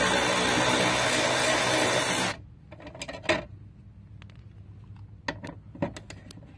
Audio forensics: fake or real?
real